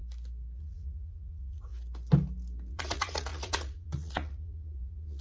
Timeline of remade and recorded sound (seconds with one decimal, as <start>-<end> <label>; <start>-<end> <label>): 0.0-0.6 recorded; 0.6-1.7 remade; 1.7-2.7 recorded; 2.7-5.2 remade